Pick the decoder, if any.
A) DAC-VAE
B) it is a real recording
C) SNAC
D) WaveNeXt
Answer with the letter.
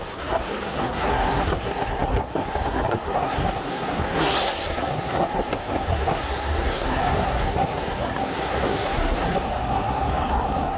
C